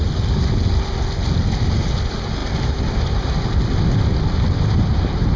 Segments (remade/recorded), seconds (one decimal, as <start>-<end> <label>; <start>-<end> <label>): 0.0-5.4 recorded